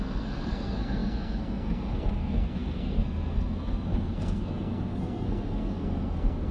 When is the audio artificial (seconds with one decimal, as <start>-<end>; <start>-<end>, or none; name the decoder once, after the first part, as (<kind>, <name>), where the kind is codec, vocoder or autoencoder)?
0.0-6.5 (codec, SNAC)